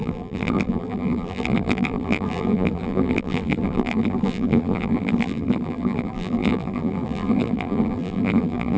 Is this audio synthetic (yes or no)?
yes